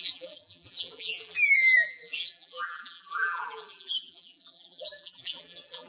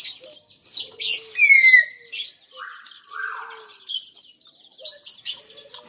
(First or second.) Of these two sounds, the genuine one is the second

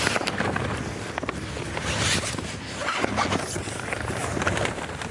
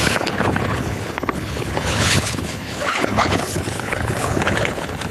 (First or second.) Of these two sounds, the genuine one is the first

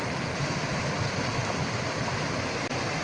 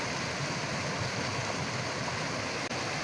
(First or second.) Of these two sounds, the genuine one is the second